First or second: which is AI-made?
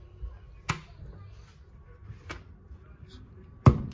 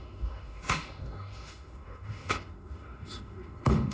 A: second